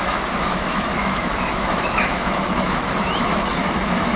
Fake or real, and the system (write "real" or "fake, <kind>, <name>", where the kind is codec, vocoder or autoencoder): fake, autoencoder, DAC-VAE